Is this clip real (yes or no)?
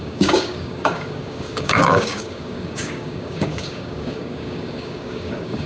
no